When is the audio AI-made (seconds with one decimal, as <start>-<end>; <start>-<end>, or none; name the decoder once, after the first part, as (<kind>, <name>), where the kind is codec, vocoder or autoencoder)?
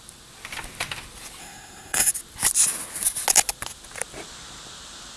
1.4-2.1 (codec, SNAC)